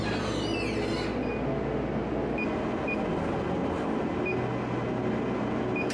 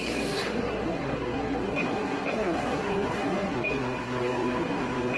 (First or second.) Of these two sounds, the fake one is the second